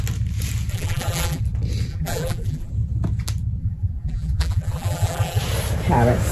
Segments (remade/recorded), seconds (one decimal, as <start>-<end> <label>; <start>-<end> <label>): 0.0-0.7 recorded; 0.7-1.4 remade; 1.4-1.9 recorded; 1.9-2.7 remade; 2.7-3.6 recorded; 3.6-5.4 remade; 5.4-6.3 recorded